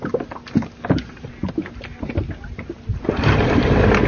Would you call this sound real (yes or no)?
yes